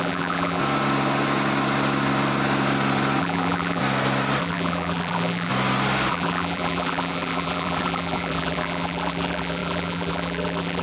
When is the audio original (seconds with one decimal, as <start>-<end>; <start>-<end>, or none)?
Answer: 0.6-3.2; 3.8-4.4; 5.5-6.1